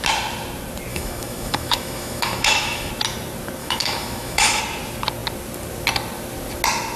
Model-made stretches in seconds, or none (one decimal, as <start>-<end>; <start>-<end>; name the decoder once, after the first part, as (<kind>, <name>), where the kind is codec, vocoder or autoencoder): 0.9-2.9 (autoencoder, DAC-VAE); 3.6-4.6